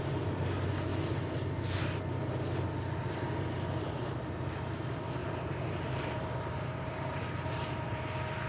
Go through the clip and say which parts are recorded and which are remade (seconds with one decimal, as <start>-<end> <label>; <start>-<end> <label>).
0.0-5.2 recorded; 5.2-8.1 remade; 8.1-8.5 recorded